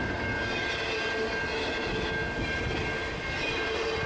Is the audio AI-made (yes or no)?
no